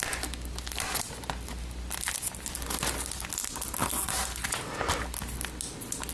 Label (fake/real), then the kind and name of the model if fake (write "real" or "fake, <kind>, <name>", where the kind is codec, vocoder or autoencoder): real